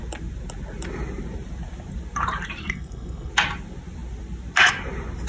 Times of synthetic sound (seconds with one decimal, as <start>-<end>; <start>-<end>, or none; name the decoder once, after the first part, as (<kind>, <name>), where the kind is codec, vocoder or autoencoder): 2.6-3.3 (codec, SNAC)